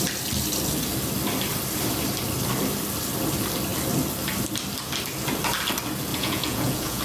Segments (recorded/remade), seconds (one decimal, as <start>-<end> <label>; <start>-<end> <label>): 0.0-6.1 recorded; 6.1-7.0 remade